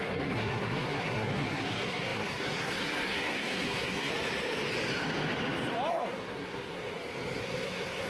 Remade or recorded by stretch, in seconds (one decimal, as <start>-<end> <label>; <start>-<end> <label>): 0.0-4.1 remade; 4.1-5.9 recorded; 5.9-6.9 remade; 6.9-7.4 recorded; 7.4-8.1 remade